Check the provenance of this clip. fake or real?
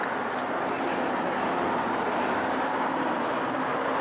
real